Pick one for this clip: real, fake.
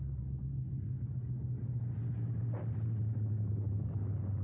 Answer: real